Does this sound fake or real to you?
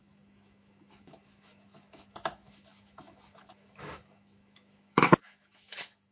fake